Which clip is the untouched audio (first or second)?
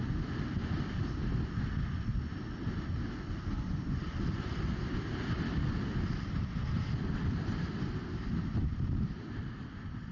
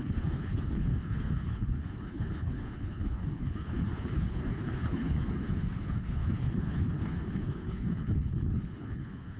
first